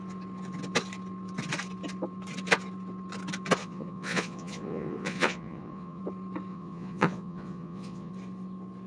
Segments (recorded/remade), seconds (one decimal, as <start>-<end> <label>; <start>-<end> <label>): 0.0-3.6 recorded; 3.6-6.0 remade; 6.0-6.5 recorded; 6.5-8.1 remade; 8.1-8.9 recorded